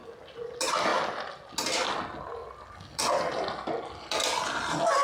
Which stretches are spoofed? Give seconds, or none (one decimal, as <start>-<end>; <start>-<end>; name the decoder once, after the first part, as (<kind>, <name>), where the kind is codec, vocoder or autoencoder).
none